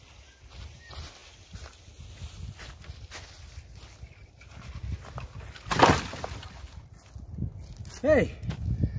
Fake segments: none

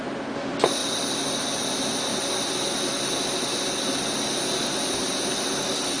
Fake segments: none

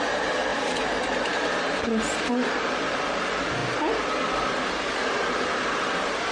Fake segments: 0.0-3.6 (vocoder, BigVGAN v2); 4.3-6.3

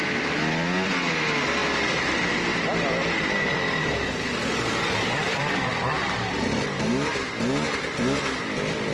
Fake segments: 5.3-5.9 (vocoder, BigVGAN v2)

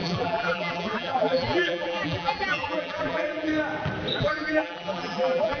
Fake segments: 0.0-3.5 (vocoder, BigVGAN v2); 4.2-5.6

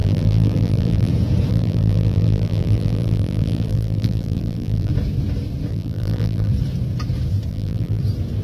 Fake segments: 0.0-1.1 (vocoder, BigVGAN v2); 1.5-4.9; 5.7-6.5; 7.5-8.0